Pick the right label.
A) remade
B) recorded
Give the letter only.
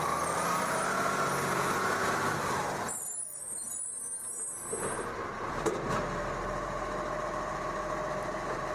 B